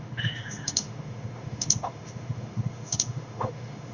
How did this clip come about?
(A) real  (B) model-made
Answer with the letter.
B